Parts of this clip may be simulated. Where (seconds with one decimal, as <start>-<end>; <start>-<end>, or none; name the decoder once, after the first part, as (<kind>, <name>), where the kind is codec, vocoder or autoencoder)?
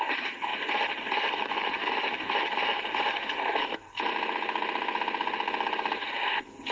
none